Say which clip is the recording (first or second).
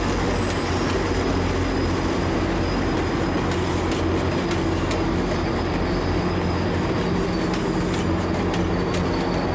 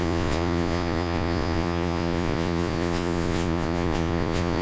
first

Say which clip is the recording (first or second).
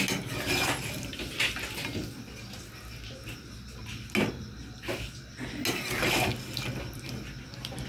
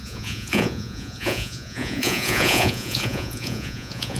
first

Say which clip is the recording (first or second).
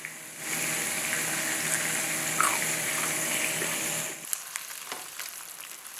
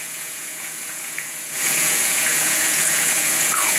first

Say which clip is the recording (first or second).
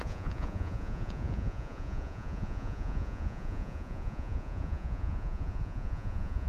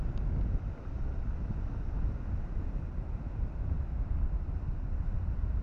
second